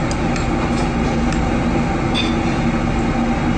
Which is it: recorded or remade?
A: recorded